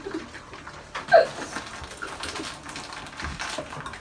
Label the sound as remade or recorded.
recorded